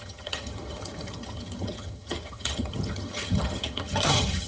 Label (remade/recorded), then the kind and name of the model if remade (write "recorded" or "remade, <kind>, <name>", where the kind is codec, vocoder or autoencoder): remade, vocoder, HiFi-GAN